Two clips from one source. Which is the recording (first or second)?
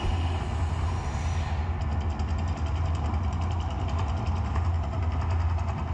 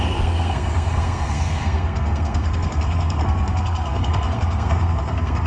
first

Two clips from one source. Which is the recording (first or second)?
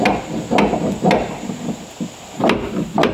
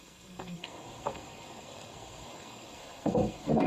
first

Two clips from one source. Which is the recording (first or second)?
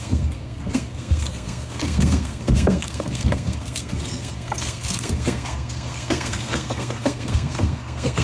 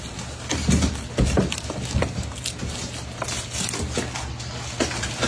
second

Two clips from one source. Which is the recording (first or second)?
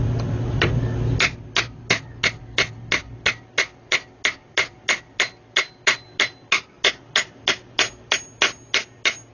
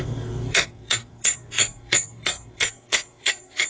first